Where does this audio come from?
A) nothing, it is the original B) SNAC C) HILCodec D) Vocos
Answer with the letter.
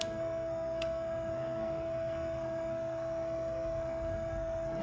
B